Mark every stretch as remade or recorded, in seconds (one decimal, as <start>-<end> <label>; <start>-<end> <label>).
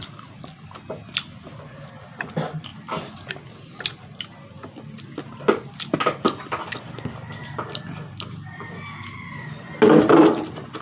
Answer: 0.0-10.8 recorded